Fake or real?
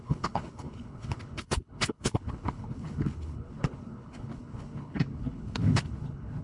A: fake